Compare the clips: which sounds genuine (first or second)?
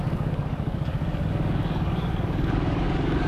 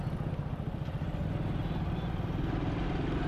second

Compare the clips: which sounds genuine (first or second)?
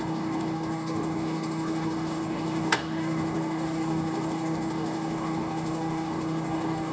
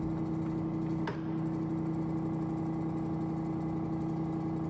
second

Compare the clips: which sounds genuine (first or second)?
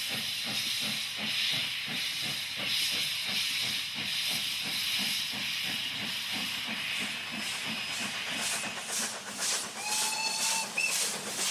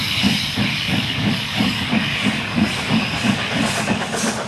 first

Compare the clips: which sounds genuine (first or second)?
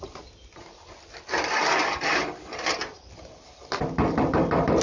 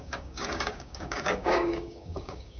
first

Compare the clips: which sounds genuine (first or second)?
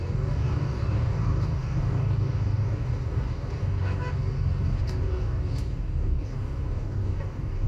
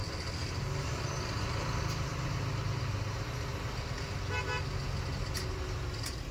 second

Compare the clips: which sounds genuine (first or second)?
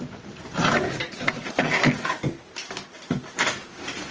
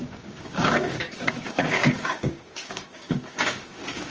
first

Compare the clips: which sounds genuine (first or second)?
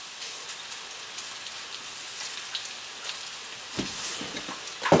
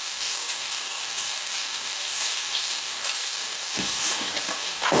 first